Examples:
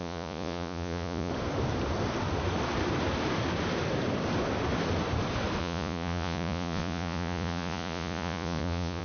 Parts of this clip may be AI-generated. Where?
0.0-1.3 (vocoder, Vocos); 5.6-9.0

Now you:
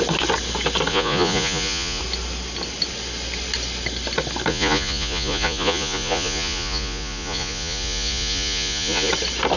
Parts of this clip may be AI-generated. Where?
0.9-2.0 (vocoder, Vocos); 4.5-9.1

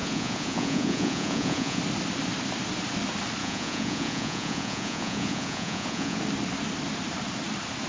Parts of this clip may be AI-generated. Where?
0.0-1.8 (vocoder, Vocos); 3.4-6.2

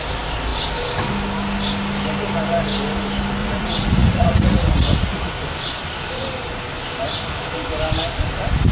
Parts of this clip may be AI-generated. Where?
3.4-5.4 (vocoder, Vocos)